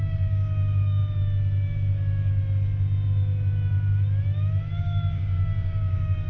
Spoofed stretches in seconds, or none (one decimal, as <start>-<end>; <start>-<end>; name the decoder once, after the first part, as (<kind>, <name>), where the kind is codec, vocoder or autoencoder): 0.0-1.0 (codec, DAC); 4.8-6.3